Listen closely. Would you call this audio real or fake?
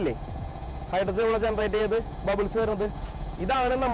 fake